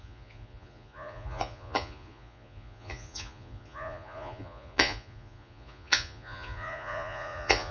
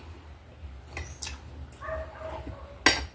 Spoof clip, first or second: first